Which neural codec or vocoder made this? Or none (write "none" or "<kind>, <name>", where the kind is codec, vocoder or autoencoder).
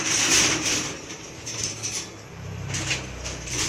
vocoder, BigVGAN v2